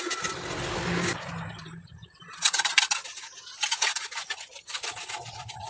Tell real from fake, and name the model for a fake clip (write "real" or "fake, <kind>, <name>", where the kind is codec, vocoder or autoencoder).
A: real